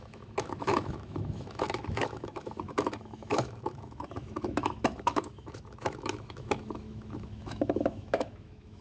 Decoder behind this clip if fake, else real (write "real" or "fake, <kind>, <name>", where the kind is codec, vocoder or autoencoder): fake, autoencoder, DAC-VAE